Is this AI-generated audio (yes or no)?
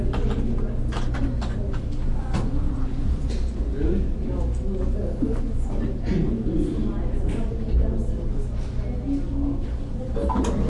no